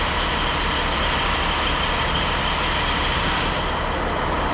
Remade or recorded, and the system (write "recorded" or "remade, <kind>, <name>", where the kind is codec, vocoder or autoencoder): recorded